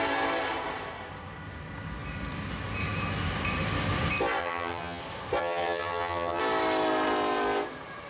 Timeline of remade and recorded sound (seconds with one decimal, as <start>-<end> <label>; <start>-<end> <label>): 0.0-4.4 recorded; 4.4-5.0 remade; 5.0-5.4 recorded; 5.4-6.4 remade; 6.4-8.1 recorded